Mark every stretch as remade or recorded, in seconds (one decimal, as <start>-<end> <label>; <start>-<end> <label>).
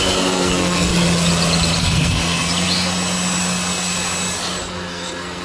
0.0-0.9 remade; 0.9-1.8 recorded; 1.8-2.4 remade; 2.4-4.6 recorded; 4.6-5.4 remade